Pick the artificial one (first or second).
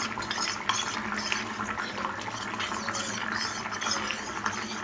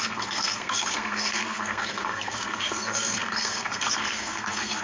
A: second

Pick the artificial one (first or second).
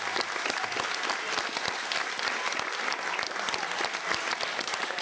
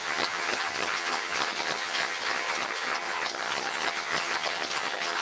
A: second